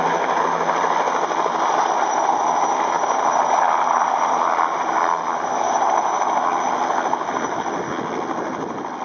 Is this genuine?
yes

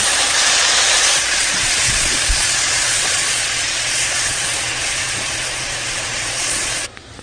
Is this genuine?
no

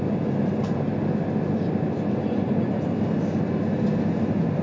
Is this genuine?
yes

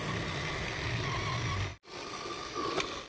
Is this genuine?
yes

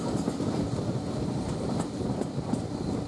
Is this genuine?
yes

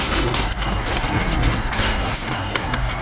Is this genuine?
no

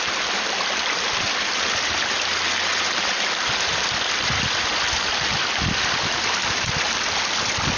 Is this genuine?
yes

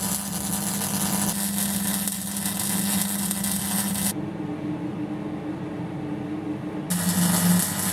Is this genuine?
yes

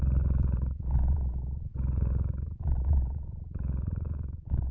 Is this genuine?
no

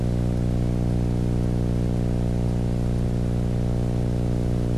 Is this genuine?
yes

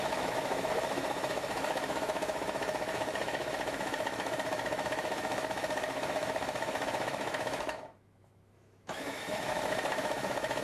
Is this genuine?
no